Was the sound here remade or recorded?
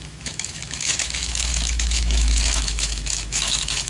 remade